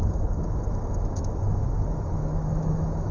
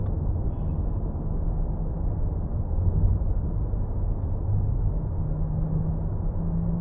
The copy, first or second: first